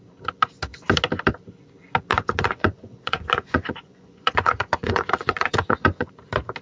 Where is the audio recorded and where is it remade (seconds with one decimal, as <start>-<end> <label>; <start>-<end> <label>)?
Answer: 0.0-2.1 recorded; 2.1-6.1 remade; 6.1-6.6 recorded